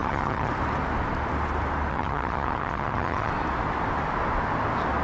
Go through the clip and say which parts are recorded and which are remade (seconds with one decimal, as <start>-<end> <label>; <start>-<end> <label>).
0.0-0.5 remade; 0.5-1.9 recorded; 1.9-3.3 remade; 3.3-5.0 recorded